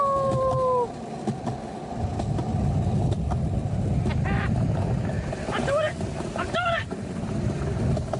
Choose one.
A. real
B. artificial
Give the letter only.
A